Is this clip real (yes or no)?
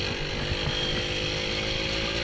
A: yes